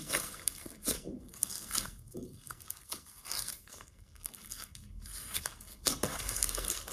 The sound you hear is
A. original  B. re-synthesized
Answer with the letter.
B